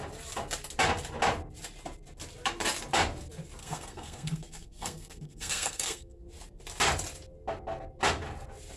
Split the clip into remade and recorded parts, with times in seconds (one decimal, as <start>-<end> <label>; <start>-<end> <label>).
0.0-3.6 recorded; 3.6-6.2 remade; 6.2-8.8 recorded